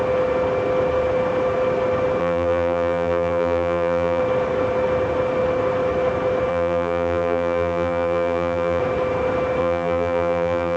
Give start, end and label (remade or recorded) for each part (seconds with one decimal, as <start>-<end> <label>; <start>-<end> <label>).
0.0-2.2 recorded; 2.2-4.2 remade; 4.2-6.5 recorded; 6.5-8.8 remade; 8.8-9.6 recorded; 9.6-10.8 remade